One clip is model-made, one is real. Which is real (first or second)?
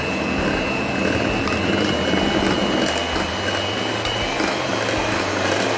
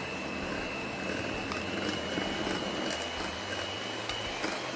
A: first